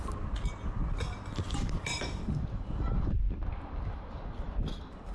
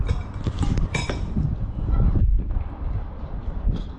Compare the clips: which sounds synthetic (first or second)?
second